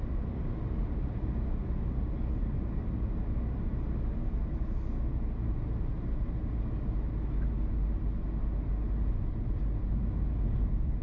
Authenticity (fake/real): real